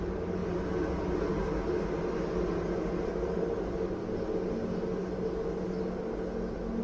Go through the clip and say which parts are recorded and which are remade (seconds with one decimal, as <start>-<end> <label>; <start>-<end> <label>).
0.0-6.8 recorded